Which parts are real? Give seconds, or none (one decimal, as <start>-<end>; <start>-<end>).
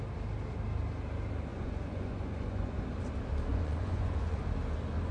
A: 0.0-1.5; 2.8-3.5; 4.4-5.1